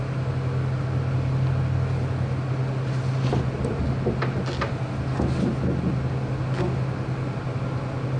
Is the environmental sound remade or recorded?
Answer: recorded